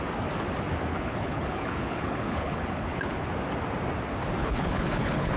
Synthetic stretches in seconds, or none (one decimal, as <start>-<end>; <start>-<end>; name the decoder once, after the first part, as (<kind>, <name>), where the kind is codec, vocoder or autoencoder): 0.9-3.3 (codec, HILCodec); 4.4-5.4